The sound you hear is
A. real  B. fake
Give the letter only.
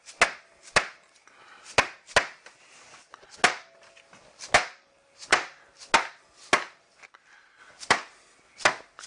A